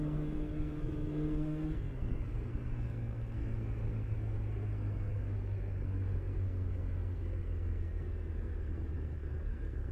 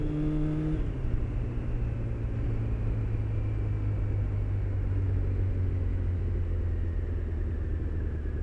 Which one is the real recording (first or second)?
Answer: second